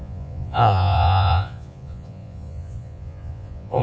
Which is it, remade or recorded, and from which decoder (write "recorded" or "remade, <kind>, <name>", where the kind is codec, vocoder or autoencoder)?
remade, vocoder, Vocos